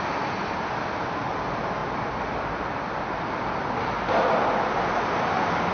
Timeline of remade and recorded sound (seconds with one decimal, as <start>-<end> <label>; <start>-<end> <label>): 0.0-1.8 recorded; 1.8-3.3 remade; 3.3-5.7 recorded